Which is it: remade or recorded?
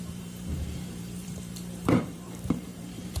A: remade